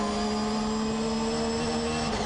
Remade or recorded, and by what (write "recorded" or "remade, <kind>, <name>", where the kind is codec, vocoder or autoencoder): recorded